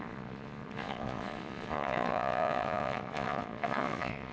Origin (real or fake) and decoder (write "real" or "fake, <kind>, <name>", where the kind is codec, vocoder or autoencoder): fake, vocoder, Vocos